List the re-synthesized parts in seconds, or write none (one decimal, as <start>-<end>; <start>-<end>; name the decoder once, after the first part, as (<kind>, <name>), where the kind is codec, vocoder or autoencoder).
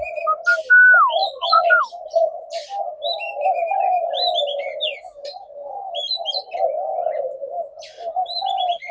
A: 1.2-1.8 (vocoder, Vocos)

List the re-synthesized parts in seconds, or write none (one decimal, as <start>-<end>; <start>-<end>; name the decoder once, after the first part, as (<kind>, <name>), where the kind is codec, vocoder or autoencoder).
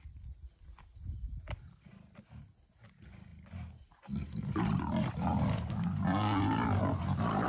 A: none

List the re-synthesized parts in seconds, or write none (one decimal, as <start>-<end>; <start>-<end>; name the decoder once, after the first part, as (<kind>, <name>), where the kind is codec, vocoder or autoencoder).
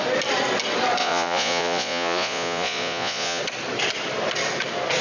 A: 1.0-3.4 (vocoder, Vocos)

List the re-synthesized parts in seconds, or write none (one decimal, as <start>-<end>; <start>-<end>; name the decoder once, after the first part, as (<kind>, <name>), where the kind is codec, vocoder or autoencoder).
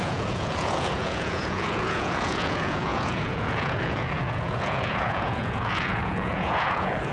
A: 0.0-7.1 (vocoder, Vocos)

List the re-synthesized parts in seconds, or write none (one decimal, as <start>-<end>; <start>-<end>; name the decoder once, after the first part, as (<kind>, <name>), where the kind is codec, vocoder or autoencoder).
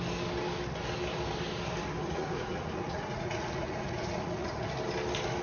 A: 2.0-4.7 (vocoder, Vocos)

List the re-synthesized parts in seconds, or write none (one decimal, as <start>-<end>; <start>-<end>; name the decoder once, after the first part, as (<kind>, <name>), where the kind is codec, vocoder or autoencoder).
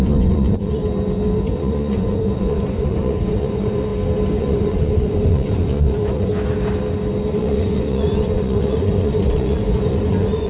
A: 0.0-0.8 (vocoder, Vocos); 1.4-3.9; 4.4-6.3; 7.3-10.5